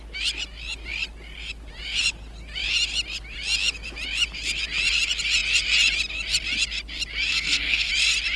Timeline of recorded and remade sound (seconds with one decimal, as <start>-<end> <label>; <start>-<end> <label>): 0.0-7.3 recorded; 7.3-7.9 remade; 7.9-8.4 recorded